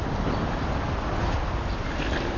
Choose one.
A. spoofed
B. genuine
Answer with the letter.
B